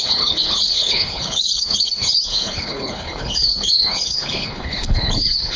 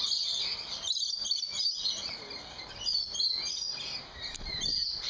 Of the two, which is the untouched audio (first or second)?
second